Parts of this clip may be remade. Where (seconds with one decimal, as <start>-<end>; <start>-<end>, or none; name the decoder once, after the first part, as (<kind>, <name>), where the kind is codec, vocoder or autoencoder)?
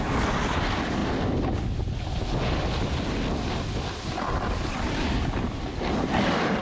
none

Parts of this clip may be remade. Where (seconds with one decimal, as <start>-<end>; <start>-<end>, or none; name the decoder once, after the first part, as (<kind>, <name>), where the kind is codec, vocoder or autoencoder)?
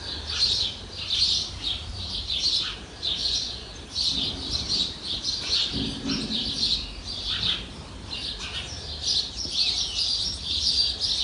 3.2-3.7 (vocoder, Vocos)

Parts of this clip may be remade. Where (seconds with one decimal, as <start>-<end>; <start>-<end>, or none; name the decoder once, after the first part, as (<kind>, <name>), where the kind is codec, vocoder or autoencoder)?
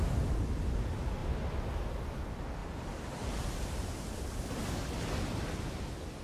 1.2-1.7 (vocoder, BigVGAN v2); 2.6-4.4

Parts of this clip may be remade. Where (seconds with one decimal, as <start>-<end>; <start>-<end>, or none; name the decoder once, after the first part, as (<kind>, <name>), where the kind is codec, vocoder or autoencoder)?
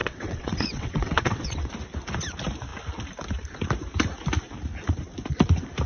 0.0-1.7 (vocoder, WaveNeXt)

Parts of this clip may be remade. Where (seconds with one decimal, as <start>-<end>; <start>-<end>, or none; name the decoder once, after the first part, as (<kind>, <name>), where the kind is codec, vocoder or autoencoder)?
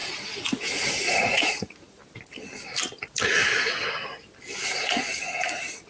0.0-2.0 (vocoder, Vocos); 4.6-5.9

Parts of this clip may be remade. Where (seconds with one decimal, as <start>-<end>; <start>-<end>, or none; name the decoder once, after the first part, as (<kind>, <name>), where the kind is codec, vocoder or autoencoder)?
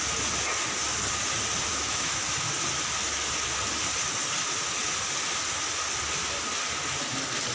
1.7-2.2 (autoencoder, DAC-VAE)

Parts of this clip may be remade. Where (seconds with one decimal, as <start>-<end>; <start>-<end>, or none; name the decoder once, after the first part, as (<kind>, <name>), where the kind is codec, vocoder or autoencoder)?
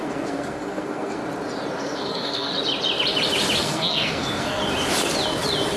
0.0-1.2 (codec, SNAC); 1.8-2.5; 3.6-4.6